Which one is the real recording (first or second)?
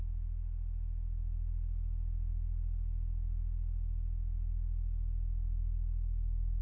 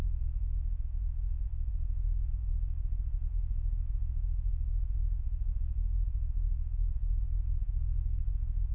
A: first